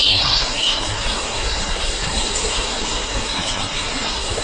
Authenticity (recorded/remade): remade